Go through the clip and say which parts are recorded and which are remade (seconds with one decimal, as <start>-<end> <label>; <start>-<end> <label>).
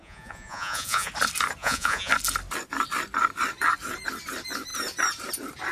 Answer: 0.0-1.1 remade; 1.1-1.6 recorded; 1.6-2.1 remade; 2.1-5.7 recorded